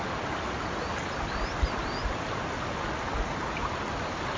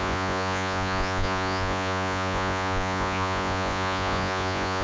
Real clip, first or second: first